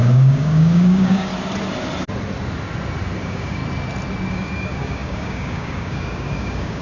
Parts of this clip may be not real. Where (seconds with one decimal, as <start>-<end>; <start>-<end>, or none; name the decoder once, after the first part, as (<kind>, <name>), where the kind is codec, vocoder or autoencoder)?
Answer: 0.0-1.3 (codec, DAC); 3.2-3.6; 4.3-6.8